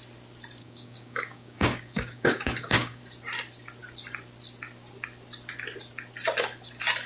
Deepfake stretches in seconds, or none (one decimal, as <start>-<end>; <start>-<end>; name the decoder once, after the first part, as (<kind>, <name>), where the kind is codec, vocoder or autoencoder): 0.6-3.0 (codec, DAC)